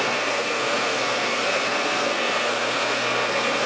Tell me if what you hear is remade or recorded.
remade